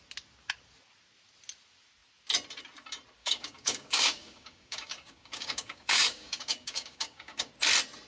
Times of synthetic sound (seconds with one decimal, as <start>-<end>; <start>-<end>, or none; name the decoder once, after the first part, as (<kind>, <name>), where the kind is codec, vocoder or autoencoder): 3.2-7.5 (codec, DAC)